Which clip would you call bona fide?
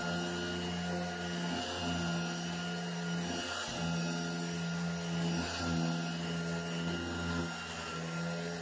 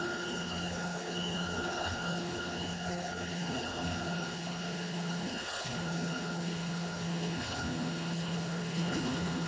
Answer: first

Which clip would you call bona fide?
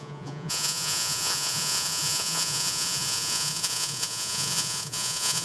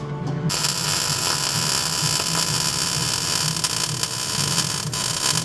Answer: second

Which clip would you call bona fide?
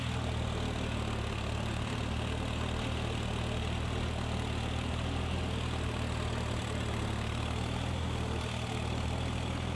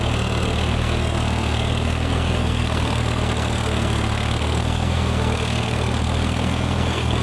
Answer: first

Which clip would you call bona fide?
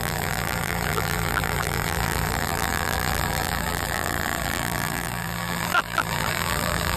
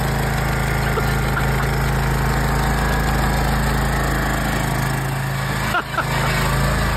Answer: second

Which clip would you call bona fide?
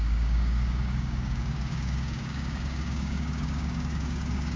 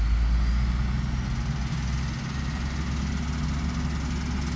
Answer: second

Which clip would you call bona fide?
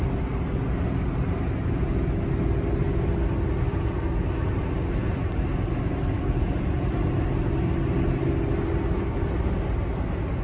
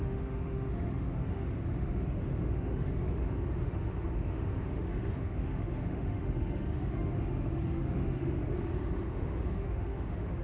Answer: first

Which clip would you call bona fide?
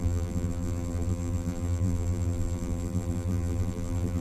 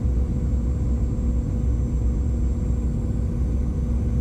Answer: second